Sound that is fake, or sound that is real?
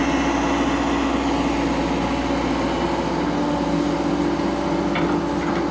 real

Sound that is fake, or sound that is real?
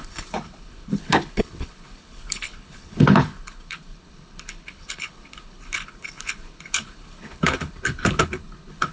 fake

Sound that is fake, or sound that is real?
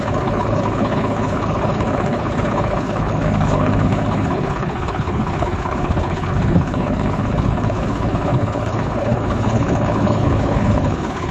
fake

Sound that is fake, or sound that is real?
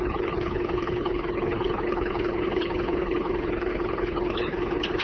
fake